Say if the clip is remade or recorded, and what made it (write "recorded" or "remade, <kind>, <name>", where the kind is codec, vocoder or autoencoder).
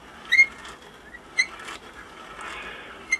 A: recorded